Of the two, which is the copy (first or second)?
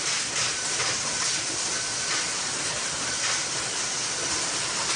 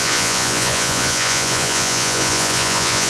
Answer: second